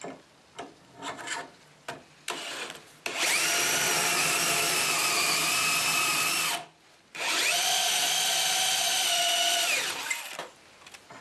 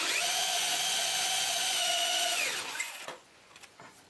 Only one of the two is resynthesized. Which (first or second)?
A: second